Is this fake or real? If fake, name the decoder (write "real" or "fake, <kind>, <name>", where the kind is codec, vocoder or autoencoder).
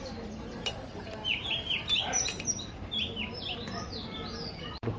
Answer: fake, vocoder, BigVGAN v2